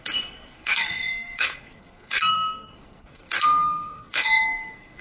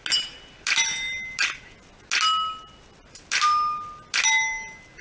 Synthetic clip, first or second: first